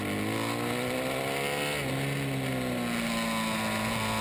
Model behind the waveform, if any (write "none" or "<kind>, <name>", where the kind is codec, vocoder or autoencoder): none